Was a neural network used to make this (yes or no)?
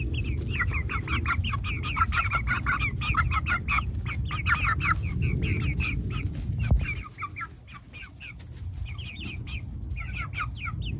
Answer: no